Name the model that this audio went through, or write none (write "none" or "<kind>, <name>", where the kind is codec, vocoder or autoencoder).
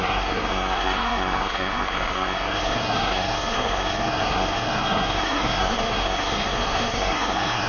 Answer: codec, SNAC